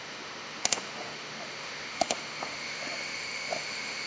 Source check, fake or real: fake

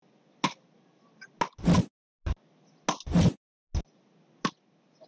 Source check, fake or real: real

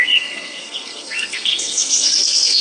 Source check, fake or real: fake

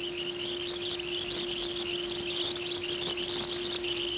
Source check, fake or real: real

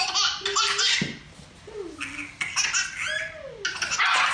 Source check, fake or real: real